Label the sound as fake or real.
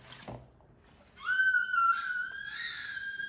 real